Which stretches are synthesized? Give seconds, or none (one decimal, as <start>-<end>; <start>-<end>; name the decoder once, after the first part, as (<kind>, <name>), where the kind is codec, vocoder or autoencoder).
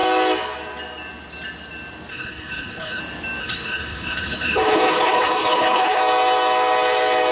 2.1-3.0 (codec, HILCodec); 3.4-6.0